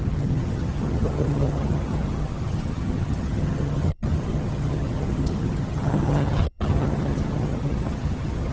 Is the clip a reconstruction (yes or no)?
yes